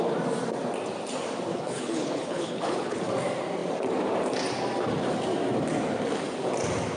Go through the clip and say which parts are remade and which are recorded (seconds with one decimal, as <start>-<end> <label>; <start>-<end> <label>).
0.0-1.5 recorded; 1.5-3.0 remade; 3.0-7.0 recorded